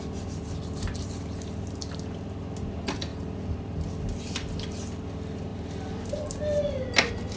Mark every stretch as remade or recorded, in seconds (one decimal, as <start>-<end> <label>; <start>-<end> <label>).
0.0-7.4 recorded